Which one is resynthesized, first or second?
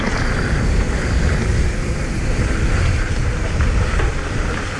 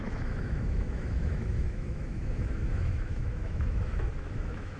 second